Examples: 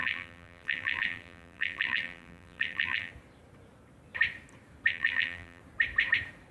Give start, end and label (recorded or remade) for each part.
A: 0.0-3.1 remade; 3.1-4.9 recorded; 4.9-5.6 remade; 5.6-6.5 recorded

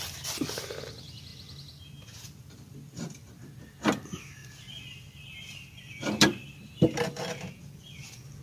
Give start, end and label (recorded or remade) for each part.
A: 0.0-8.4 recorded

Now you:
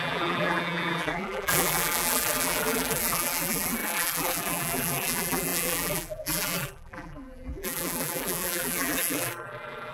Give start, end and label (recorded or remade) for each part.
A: 0.0-9.9 remade

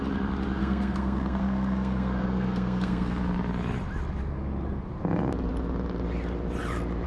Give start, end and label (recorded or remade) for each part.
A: 0.0-0.6 recorded; 0.6-3.2 remade; 3.2-7.1 recorded